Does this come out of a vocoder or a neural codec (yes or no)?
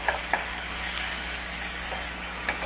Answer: yes